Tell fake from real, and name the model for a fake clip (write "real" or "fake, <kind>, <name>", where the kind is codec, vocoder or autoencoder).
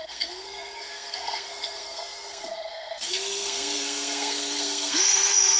fake, codec, SNAC